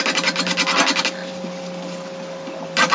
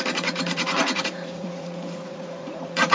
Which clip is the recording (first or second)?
first